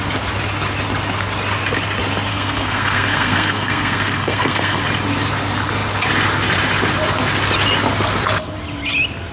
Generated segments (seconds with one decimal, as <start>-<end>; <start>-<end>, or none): 2.3-4.8